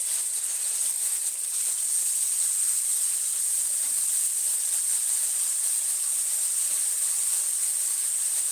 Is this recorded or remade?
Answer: recorded